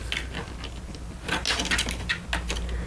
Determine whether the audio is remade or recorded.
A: recorded